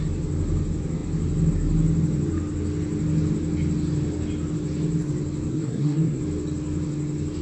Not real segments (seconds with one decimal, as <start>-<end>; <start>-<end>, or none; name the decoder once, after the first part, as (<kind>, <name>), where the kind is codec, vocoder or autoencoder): 5.5-6.2 (codec, SNAC)